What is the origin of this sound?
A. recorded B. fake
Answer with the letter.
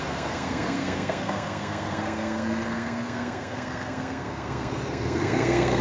B